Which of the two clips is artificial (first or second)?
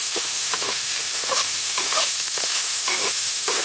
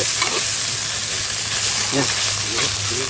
first